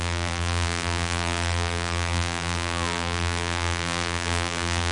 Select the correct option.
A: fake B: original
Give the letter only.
A